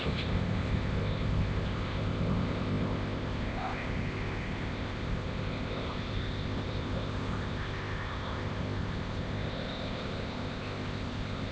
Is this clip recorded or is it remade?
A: remade